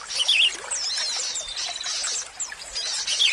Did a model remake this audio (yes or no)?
no